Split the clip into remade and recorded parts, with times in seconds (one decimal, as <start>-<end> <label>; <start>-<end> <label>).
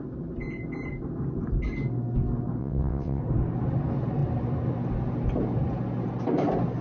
0.0-2.6 recorded; 2.6-3.2 remade; 3.2-6.8 recorded